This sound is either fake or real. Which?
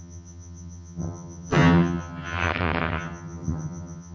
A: fake